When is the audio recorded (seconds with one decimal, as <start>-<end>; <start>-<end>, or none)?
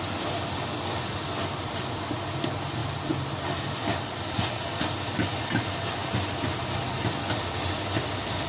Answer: 0.0-2.8; 3.3-3.9; 5.0-8.5